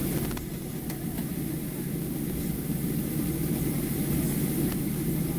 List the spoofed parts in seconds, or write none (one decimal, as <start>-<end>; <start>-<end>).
none